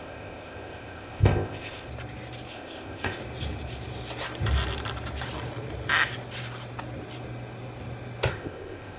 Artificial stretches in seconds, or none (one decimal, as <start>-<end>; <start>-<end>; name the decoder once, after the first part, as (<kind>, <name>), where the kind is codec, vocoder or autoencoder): 0.0-1.9 (codec, ZipCodec); 2.5-3.2; 8.3-9.0